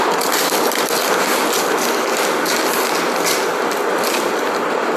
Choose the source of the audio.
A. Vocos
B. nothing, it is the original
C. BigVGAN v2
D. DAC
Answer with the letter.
B